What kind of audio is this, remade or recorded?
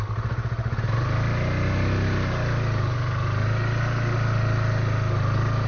recorded